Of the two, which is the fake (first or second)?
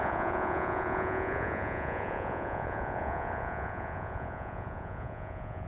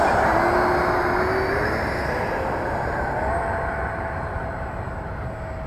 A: first